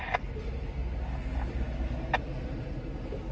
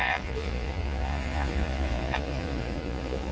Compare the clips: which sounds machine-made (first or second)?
second